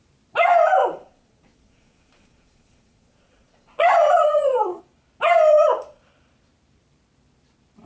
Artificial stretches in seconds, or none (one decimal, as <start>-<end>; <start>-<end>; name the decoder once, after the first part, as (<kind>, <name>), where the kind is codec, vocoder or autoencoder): 0.8-4.8 (vocoder, Vocos); 5.5-6.0